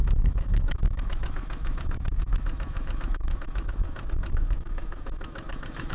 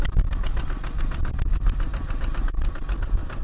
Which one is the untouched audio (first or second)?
second